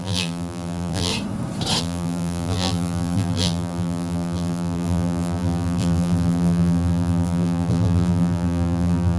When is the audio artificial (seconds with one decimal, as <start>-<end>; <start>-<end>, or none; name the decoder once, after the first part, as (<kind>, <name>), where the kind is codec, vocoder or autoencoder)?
0.0-1.1 (vocoder, BigVGAN v2); 1.8-9.2